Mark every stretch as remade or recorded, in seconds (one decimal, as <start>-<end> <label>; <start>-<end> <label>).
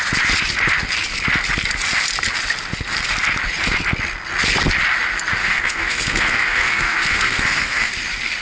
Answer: 0.0-5.4 recorded; 5.4-7.9 remade; 7.9-8.4 recorded